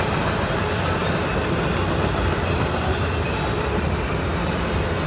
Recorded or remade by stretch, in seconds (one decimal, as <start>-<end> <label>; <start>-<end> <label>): 0.0-5.1 recorded